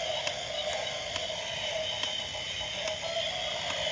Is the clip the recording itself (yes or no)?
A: yes